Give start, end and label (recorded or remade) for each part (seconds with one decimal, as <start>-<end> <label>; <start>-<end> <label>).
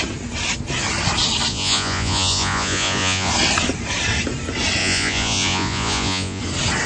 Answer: 0.0-1.5 recorded; 1.5-3.3 remade; 3.3-4.8 recorded; 4.8-6.4 remade; 6.4-6.9 recorded